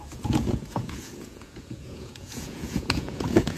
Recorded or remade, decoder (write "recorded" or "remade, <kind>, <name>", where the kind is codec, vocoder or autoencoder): remade, vocoder, Vocos